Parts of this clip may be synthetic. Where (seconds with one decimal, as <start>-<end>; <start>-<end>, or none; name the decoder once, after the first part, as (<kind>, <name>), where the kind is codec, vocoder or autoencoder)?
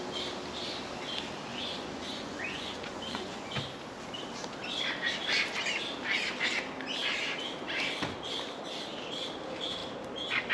1.5-3.6 (vocoder, Vocos)